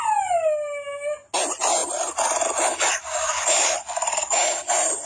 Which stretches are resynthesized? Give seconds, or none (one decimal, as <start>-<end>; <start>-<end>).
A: none